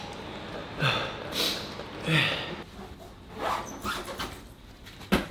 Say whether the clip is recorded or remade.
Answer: recorded